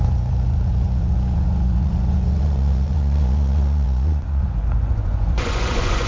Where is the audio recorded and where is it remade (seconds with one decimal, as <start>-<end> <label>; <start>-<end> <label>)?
0.0-6.1 remade